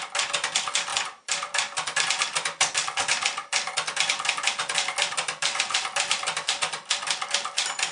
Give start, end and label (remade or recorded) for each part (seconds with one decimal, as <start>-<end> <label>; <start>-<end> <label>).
0.0-7.9 remade